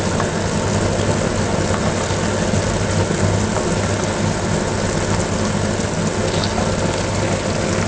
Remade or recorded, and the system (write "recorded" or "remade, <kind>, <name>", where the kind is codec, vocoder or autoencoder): recorded